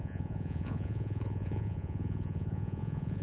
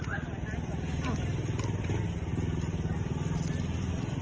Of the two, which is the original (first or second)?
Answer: second